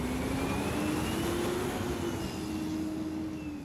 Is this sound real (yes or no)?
yes